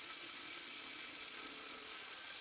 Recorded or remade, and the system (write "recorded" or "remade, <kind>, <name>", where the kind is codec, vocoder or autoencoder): remade, vocoder, Vocos